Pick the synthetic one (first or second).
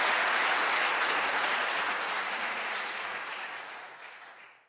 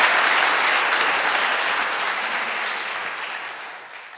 first